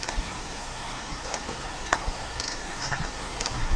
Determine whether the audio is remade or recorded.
remade